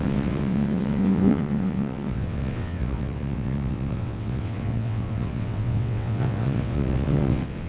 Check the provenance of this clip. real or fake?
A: fake